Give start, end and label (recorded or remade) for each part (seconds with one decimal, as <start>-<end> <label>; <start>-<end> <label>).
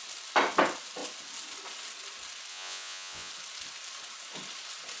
0.0-2.5 recorded; 2.5-3.3 remade; 3.3-5.0 recorded